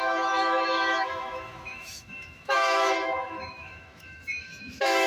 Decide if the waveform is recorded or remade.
remade